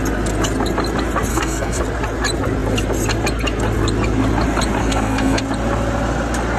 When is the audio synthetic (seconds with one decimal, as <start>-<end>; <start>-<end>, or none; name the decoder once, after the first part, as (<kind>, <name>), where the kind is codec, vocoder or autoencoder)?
1.3-1.8 (codec, SNAC); 4.8-5.4

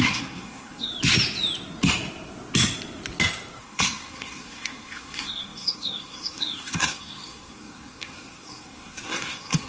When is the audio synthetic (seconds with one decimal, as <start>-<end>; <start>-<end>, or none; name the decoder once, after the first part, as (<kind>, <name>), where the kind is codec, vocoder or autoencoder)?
0.0-0.9 (codec, SNAC); 3.6-9.7

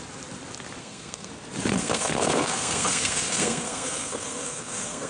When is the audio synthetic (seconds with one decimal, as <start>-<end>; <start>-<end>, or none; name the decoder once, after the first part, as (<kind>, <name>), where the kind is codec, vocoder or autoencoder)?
0.8-1.3 (codec, SNAC); 1.8-5.1

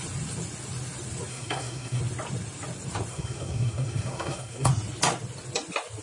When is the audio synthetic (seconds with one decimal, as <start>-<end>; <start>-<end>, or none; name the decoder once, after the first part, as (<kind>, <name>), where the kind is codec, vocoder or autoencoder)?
1.3-2.0 (codec, SNAC); 3.1-4.7

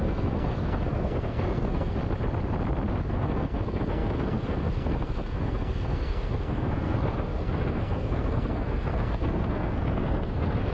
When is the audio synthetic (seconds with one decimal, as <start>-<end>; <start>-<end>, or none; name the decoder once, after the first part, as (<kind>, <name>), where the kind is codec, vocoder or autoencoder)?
0.0-2.0 (codec, SNAC); 3.1-10.7

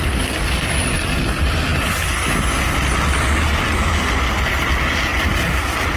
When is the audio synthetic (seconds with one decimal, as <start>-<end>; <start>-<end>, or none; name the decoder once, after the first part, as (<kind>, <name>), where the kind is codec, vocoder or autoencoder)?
none

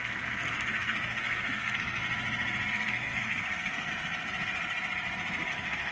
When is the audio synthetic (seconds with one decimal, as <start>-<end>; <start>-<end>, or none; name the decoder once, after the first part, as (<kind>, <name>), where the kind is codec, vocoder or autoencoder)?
0.0-2.0 (codec, SNAC); 2.7-3.9; 5.5-5.9